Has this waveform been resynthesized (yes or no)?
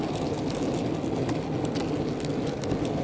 no